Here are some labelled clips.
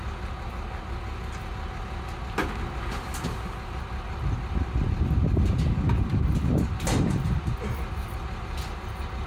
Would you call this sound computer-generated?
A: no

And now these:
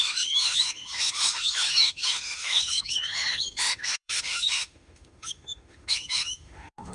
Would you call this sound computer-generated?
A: yes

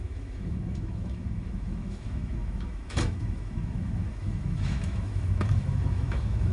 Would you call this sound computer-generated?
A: yes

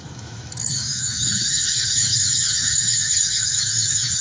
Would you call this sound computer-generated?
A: yes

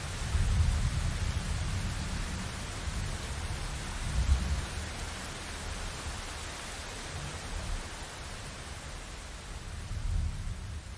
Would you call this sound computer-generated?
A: no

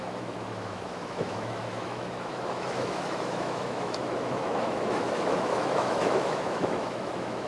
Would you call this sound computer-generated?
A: yes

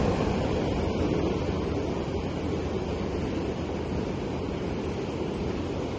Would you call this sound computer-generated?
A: no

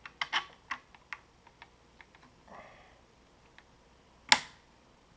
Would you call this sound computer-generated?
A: no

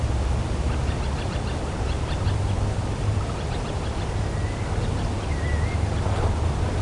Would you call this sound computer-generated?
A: no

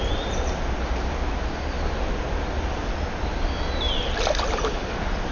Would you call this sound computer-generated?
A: no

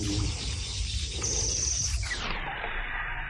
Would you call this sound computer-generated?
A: no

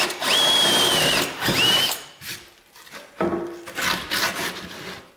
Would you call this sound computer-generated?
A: no